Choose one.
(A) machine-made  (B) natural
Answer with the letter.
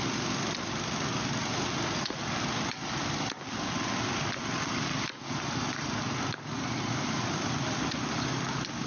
B